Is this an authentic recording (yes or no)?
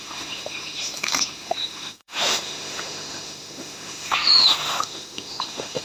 no